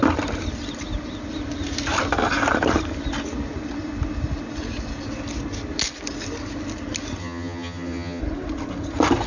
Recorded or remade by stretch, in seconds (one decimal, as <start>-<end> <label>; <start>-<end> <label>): 0.0-7.2 recorded; 7.2-8.2 remade; 8.2-9.3 recorded